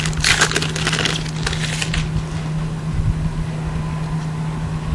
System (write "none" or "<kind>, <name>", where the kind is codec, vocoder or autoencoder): none